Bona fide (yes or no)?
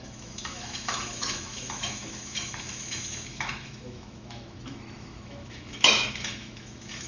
no